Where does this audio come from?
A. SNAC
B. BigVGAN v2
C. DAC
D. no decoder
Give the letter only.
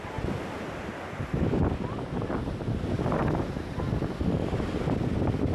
D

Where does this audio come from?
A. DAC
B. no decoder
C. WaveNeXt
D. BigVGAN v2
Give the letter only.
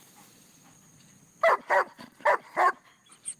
D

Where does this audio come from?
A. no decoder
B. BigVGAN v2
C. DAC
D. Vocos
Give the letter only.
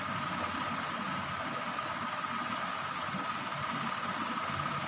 A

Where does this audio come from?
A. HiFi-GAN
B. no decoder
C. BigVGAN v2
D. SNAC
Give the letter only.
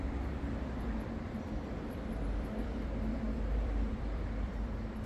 C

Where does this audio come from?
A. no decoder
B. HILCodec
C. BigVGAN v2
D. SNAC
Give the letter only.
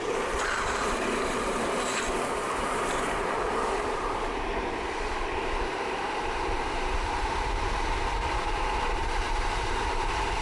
C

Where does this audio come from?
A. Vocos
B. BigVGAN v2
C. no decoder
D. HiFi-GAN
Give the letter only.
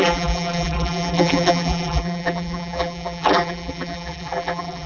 B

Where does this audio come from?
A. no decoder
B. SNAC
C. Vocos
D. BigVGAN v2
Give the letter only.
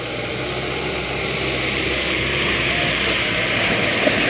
D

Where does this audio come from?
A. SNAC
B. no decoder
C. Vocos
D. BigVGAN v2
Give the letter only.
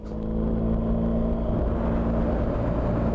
B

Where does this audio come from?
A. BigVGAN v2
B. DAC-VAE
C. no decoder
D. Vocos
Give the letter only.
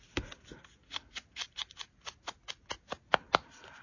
C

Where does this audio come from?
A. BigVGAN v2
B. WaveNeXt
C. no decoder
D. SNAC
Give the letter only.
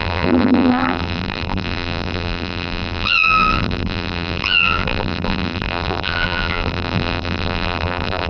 A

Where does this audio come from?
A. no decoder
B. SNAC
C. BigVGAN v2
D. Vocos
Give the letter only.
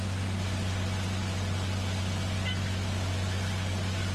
A